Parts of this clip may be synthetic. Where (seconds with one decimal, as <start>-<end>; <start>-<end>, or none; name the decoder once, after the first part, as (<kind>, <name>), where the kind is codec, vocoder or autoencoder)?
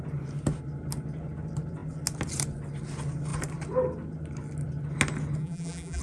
5.4-6.0 (vocoder, BigVGAN v2)